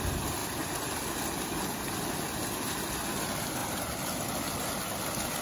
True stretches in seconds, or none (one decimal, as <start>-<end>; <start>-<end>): 0.0-0.4; 2.9-5.4